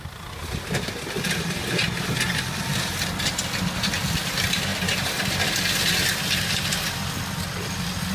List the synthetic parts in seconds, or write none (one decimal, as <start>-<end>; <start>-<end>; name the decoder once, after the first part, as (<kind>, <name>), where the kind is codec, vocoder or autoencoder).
none